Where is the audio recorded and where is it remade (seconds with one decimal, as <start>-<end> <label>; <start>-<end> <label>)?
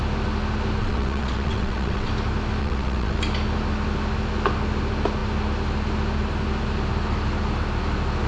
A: 0.0-0.8 recorded; 0.8-2.1 remade; 2.1-2.6 recorded; 2.6-3.2 remade; 3.2-8.3 recorded